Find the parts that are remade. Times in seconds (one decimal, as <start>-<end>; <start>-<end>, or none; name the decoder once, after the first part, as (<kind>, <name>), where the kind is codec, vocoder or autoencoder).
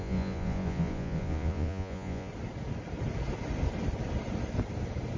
0.0-2.3 (vocoder, Vocos)